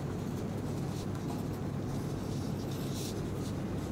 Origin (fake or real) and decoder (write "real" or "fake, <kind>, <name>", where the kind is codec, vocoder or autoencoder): real